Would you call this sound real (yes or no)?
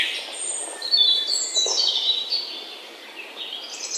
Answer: no